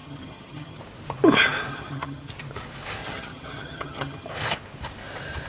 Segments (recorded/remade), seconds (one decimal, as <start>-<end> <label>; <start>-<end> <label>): 0.0-0.8 remade; 0.8-1.7 recorded; 1.7-2.3 remade; 2.3-3.0 recorded; 3.0-4.3 remade; 4.3-5.5 recorded